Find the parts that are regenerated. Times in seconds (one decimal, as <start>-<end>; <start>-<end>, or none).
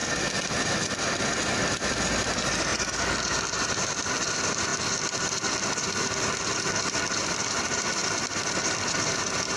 0.0-2.7; 3.6-8.0; 8.7-9.6